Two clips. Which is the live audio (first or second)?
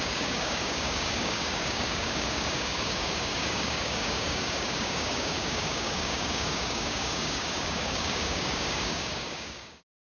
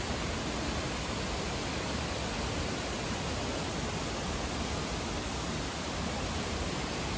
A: second